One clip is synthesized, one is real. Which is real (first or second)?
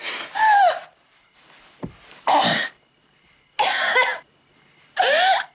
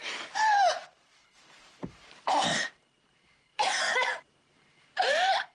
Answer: first